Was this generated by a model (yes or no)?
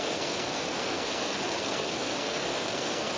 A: yes